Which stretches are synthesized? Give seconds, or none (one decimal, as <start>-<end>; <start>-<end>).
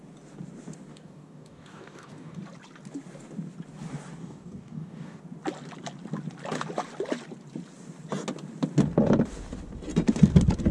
0.9-2.4; 4.2-5.2